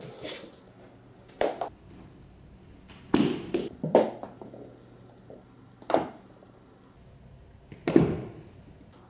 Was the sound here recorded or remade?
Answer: recorded